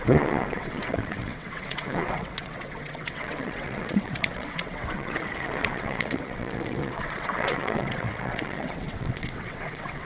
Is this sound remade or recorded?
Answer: remade